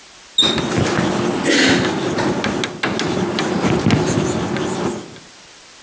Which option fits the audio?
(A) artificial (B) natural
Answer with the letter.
B